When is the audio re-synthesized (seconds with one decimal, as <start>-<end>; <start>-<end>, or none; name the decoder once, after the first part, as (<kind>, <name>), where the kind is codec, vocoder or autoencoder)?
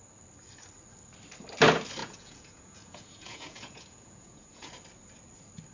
2.0-4.7 (vocoder, Vocos)